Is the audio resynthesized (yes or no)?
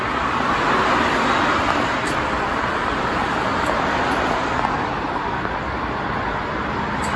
no